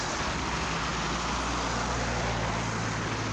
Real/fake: real